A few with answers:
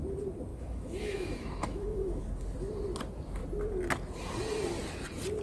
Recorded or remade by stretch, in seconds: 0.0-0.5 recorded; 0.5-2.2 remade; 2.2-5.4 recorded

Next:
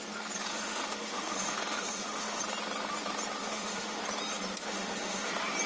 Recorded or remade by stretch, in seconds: 0.0-0.5 recorded; 0.5-2.4 remade; 2.4-3.4 recorded; 3.4-4.0 remade; 4.0-4.6 recorded; 4.6-5.3 remade; 5.3-5.7 recorded

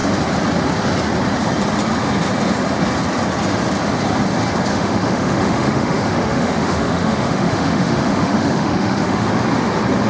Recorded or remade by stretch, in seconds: 0.0-4.7 recorded; 4.7-9.3 remade; 9.3-10.1 recorded

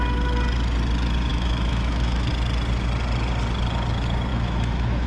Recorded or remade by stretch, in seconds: 0.0-1.3 recorded; 1.3-2.3 remade; 2.3-4.3 recorded; 4.3-5.1 remade

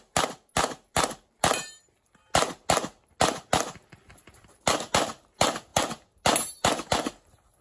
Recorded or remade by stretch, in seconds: 0.0-7.6 recorded

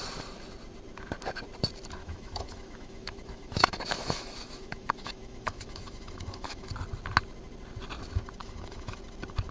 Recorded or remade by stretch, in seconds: 0.0-2.0 recorded; 2.0-6.7 remade; 6.7-8.4 recorded; 8.4-9.0 remade; 9.0-9.5 recorded